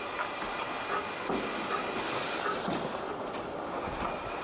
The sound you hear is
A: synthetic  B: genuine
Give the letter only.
B